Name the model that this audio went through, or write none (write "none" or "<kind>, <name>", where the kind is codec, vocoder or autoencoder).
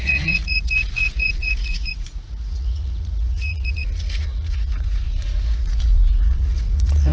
vocoder, Vocos